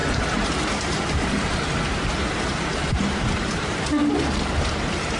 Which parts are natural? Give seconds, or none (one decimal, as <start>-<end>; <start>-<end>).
3.9-4.5